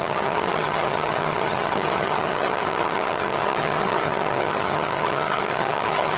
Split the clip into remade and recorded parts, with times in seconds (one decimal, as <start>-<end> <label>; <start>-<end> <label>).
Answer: 0.0-6.2 remade